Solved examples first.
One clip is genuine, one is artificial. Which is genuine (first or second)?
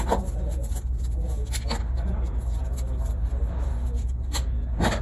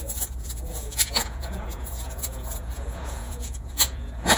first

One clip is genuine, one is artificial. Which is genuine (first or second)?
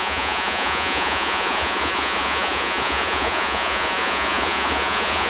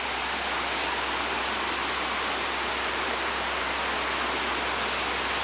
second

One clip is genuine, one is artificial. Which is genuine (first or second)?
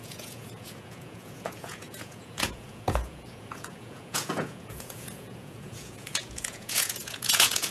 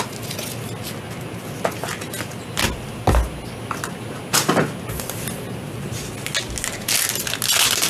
second